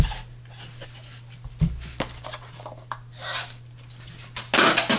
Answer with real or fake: real